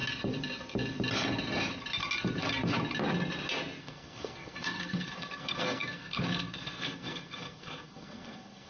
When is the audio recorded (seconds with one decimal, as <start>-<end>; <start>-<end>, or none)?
0.0-3.8